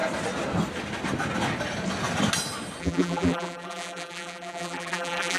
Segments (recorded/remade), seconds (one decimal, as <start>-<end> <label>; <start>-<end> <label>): 0.0-2.8 recorded; 2.8-5.4 remade